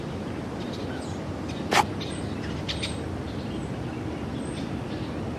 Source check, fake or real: real